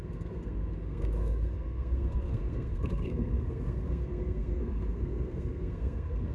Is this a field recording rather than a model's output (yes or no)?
no